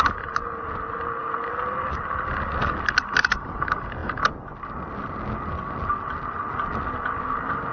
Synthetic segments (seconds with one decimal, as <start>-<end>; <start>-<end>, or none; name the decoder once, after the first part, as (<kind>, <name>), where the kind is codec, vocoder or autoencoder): none